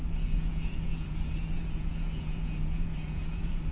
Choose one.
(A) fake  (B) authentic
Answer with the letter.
A